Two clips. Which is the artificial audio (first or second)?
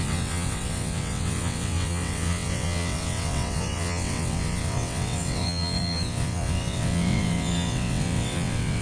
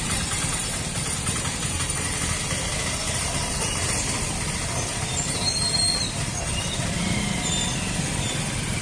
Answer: first